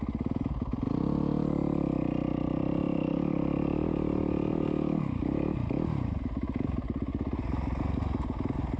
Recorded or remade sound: recorded